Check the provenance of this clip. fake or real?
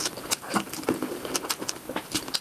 fake